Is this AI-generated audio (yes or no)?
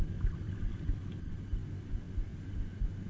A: no